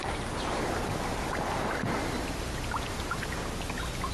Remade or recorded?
recorded